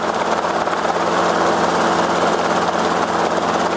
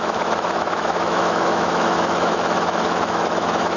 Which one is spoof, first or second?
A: second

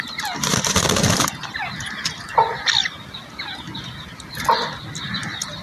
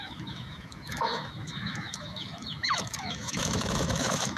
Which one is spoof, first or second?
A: second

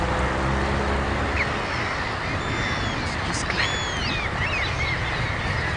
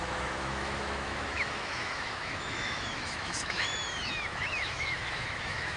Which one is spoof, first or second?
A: second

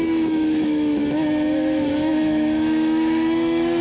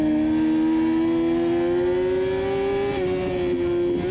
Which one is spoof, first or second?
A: first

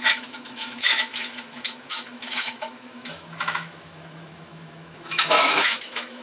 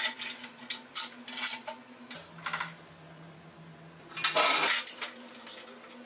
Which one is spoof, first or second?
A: first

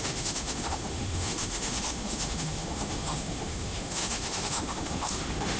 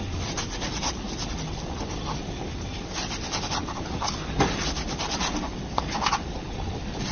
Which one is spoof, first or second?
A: first